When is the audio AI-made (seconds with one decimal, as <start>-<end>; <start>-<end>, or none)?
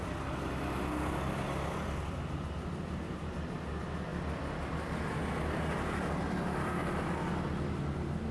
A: none